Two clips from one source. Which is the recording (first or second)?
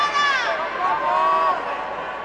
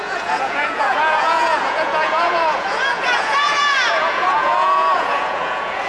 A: first